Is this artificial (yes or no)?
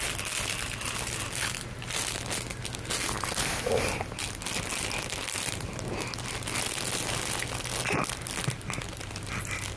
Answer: no